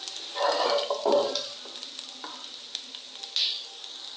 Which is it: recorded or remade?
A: recorded